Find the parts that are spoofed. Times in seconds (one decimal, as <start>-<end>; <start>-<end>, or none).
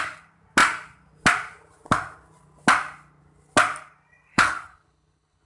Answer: 4.3-5.5